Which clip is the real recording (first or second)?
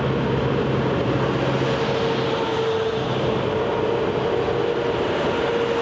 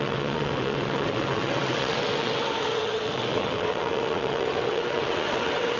first